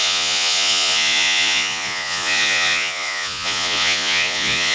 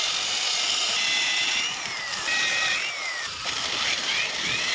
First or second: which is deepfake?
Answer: first